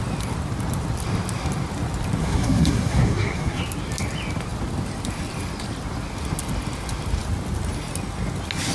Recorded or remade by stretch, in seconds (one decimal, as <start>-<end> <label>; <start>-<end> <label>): 0.0-2.2 recorded; 2.2-3.6 remade; 3.6-8.7 recorded